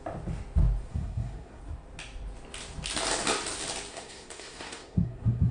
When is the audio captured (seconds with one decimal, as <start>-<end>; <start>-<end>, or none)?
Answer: 0.0-0.9; 1.6-3.9